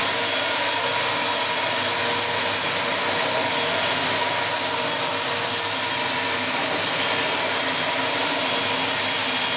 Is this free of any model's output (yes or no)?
yes